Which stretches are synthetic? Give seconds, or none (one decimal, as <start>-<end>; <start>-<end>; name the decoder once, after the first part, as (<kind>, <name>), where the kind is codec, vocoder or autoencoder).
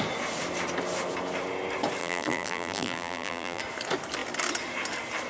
2.0-3.6 (vocoder, BigVGAN v2)